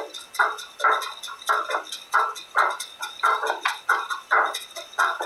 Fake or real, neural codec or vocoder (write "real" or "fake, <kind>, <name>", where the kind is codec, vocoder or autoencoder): real